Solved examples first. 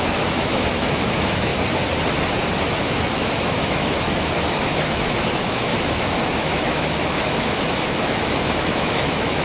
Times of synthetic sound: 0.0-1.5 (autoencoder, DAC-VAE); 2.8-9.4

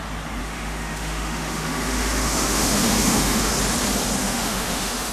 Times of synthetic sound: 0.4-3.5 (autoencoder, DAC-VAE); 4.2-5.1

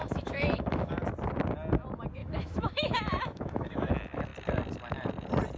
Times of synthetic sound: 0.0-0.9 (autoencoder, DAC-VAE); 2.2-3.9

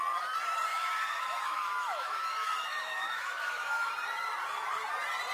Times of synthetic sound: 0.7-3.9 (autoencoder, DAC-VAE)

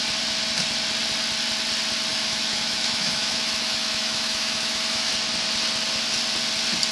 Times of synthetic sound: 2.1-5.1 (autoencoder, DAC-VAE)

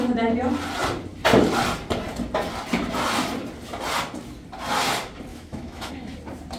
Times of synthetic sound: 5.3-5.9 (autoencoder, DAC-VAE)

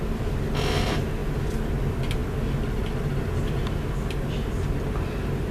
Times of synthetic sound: none